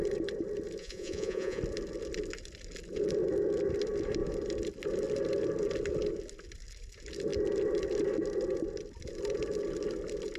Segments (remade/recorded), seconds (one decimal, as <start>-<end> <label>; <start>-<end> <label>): 0.0-0.8 recorded; 0.8-1.6 remade; 1.6-10.4 recorded